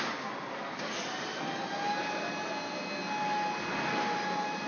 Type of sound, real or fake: real